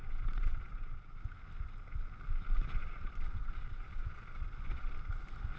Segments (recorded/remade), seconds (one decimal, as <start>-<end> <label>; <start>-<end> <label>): 0.0-1.2 remade; 1.2-2.8 recorded; 2.8-4.9 remade; 4.9-5.6 recorded